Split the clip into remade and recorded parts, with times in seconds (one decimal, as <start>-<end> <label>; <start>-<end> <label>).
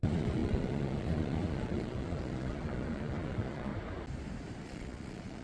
0.0-3.7 remade; 3.7-4.6 recorded; 4.6-5.4 remade